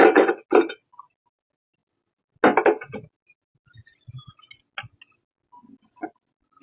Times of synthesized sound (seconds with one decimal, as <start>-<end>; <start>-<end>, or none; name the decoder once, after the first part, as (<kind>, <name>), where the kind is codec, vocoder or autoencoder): none